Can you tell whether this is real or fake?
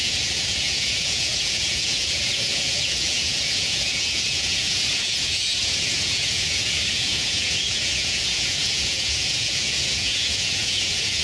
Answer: fake